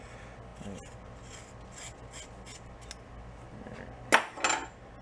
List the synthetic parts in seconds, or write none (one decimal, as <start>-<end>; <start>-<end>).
none